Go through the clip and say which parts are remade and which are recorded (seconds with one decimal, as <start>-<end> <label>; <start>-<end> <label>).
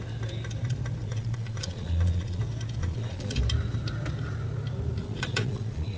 0.0-1.0 recorded; 1.0-2.4 remade; 2.4-2.8 recorded; 2.8-3.4 remade; 3.4-5.0 recorded; 5.0-6.0 remade